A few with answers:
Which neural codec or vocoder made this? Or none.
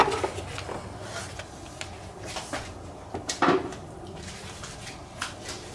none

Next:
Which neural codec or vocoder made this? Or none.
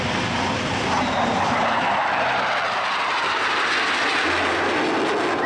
none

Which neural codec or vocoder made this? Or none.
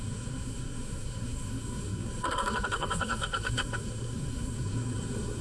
codec, SNAC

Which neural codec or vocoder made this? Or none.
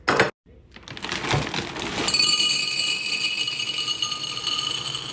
none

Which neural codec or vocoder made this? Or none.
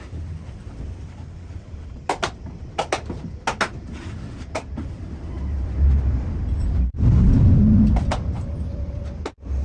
none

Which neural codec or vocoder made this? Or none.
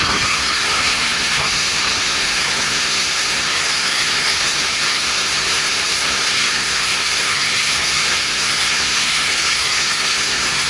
codec, SNAC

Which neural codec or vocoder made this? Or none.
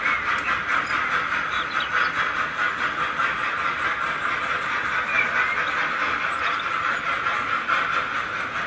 none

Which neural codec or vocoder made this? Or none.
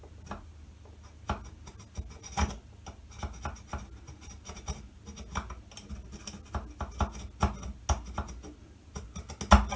none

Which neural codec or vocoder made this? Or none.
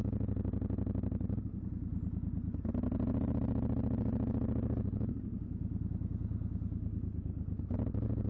none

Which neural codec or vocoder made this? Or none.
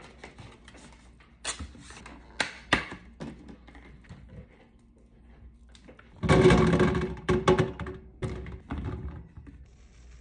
none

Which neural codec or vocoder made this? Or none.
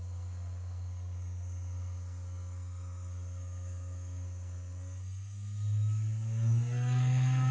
codec, SNAC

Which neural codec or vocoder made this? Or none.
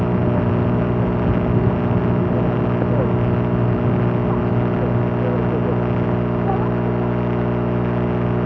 none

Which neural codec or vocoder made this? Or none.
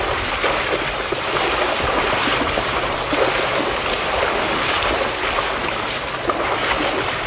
none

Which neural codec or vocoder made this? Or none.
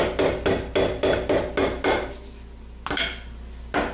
none